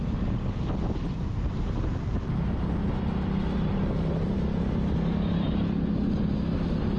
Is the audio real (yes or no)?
yes